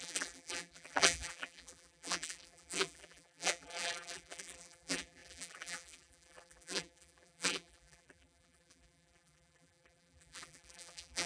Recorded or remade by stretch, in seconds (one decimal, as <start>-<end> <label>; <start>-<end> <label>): 0.0-11.3 remade